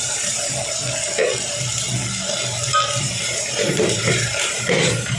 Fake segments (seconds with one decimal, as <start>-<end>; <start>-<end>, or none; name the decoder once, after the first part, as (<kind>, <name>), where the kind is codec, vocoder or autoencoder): 0.0-0.8 (vocoder, BigVGAN v2); 3.0-5.2